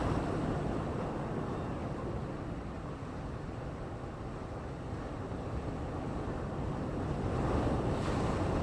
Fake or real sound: real